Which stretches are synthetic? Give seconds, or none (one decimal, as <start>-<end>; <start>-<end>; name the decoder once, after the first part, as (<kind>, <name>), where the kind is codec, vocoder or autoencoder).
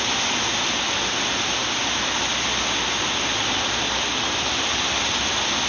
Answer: none